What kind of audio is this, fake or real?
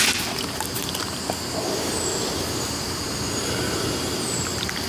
real